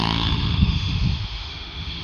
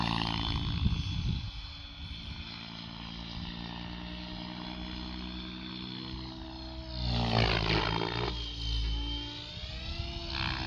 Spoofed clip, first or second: first